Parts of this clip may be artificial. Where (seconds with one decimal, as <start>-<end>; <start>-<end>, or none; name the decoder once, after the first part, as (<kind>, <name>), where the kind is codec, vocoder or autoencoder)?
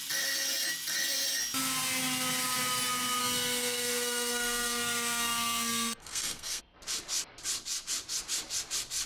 3.2-6.6 (codec, SNAC)